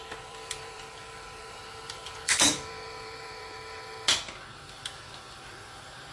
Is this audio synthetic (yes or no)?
yes